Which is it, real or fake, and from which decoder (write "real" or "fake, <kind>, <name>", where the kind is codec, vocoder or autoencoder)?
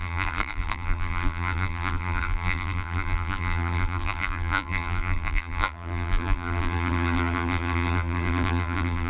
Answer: fake, vocoder, BigVGAN v2